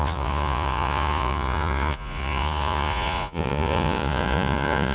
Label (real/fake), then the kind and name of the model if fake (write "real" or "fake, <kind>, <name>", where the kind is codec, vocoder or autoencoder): fake, vocoder, Vocos